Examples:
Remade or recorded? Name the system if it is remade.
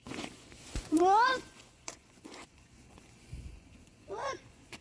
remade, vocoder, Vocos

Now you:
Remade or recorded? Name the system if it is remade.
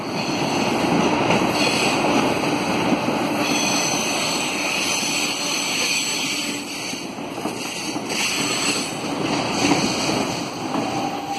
recorded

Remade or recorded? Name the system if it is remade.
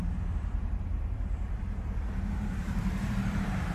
remade, vocoder, BigVGAN v2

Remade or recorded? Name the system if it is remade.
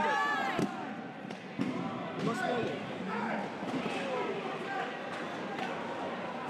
recorded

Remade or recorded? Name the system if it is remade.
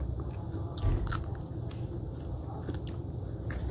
recorded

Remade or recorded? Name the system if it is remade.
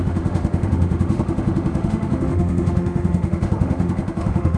remade, autoencoder, DAC-VAE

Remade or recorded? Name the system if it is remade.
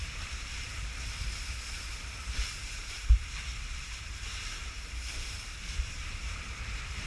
remade, vocoder, BigVGAN v2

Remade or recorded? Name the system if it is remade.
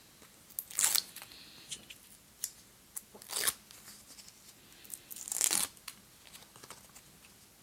recorded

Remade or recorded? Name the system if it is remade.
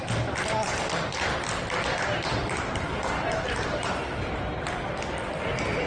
recorded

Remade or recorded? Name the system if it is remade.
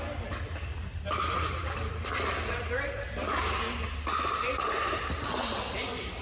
recorded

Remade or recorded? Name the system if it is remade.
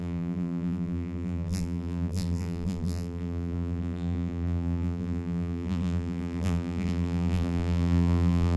remade, vocoder, BigVGAN v2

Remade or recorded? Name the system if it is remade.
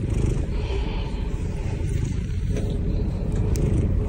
remade, vocoder, BigVGAN v2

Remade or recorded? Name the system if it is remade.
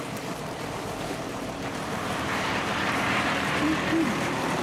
remade, vocoder, BigVGAN v2